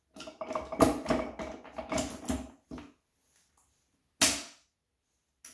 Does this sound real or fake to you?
real